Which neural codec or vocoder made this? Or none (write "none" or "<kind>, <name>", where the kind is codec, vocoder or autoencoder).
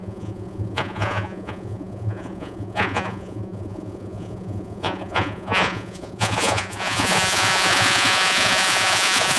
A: vocoder, Vocos